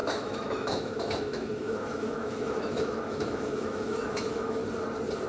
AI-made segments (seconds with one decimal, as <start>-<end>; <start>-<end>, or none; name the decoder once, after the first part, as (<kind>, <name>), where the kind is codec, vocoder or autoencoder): 0.0-4.6 (autoencoder, DAC-VAE)